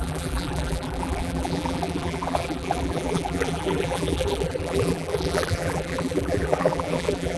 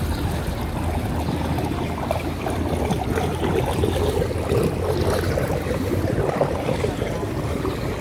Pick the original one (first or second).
second